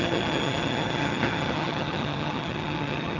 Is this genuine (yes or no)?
no